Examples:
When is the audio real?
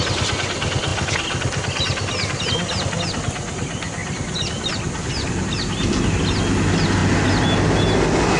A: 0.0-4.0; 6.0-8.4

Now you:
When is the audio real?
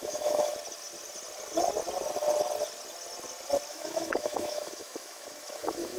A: 0.5-3.7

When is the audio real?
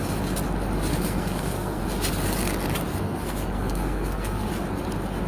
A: 0.0-0.9; 1.8-2.9; 4.5-5.3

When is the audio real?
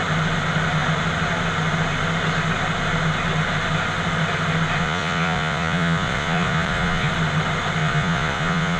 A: 0.0-4.8; 7.1-7.8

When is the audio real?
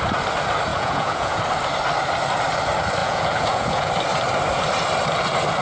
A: 0.0-0.7; 1.4-3.0; 3.9-5.6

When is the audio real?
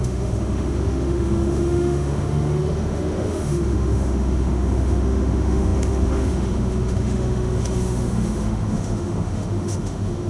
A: none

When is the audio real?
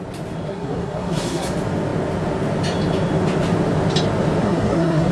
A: 0.0-0.5; 1.5-4.4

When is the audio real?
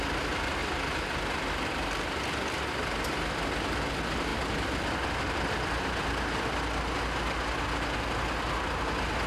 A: 0.0-9.3